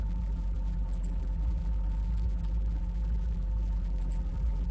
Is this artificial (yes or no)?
yes